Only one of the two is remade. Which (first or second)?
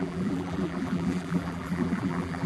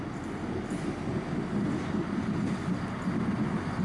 first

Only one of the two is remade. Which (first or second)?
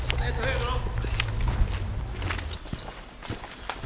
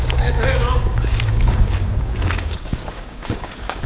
second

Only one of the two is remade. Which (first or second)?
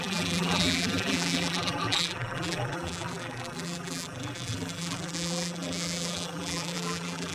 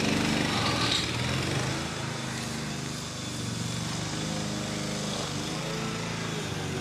first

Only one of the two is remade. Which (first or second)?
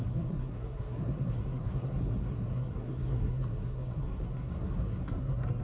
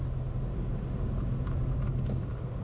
first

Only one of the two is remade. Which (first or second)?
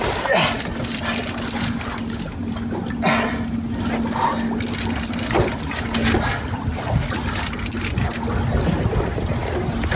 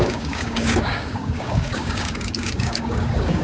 second